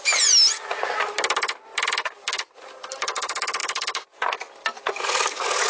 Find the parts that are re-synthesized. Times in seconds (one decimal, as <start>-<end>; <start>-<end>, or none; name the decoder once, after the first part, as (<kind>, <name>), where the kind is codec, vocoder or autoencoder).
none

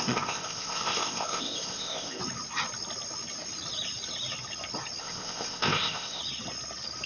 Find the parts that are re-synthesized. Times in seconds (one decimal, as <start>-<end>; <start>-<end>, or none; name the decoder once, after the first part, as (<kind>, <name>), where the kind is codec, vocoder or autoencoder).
0.0-2.2 (codec, ZipCodec); 5.0-6.2

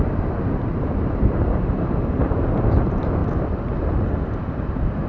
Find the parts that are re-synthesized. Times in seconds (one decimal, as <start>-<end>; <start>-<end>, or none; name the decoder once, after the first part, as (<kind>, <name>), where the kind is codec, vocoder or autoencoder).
none

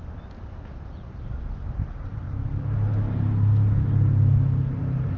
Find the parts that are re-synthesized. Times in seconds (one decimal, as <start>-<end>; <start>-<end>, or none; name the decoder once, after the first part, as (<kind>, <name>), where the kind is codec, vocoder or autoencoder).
none

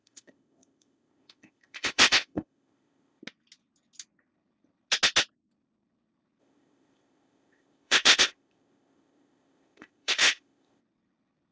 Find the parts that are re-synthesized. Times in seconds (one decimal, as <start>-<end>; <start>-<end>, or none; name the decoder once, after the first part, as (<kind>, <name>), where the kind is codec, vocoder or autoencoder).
0.0-3.2 (codec, ZipCodec); 6.4-10.8